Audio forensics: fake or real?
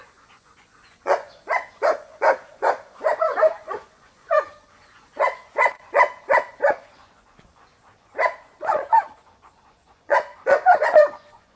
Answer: fake